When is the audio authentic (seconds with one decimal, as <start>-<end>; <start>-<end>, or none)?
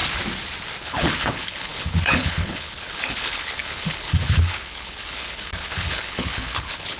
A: 0.0-0.8